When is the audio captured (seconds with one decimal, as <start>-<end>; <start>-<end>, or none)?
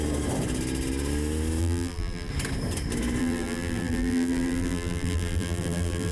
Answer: 0.0-1.6; 2.3-3.2